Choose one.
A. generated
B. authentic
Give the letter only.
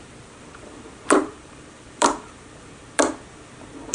A